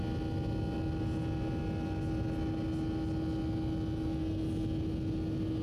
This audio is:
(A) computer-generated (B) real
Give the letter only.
B